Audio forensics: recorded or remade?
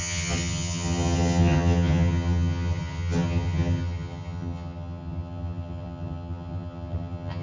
remade